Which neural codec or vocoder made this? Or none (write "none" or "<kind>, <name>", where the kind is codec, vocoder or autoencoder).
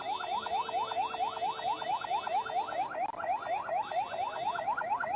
none